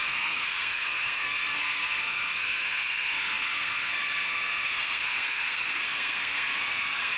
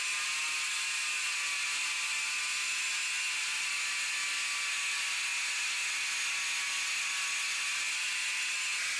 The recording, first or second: second